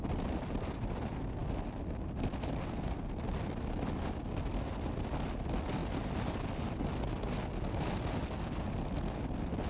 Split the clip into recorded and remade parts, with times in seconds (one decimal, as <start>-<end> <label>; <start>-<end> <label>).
0.0-9.7 recorded